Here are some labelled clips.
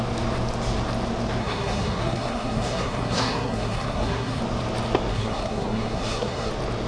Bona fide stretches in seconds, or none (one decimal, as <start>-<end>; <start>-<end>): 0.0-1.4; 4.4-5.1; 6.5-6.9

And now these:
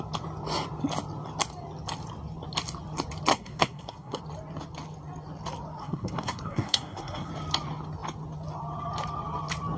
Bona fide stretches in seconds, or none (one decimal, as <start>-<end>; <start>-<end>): 0.0-3.3; 4.2-5.8; 7.3-9.8

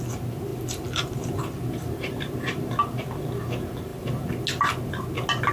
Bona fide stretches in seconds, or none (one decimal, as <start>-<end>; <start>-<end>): 0.0-0.5; 2.2-5.5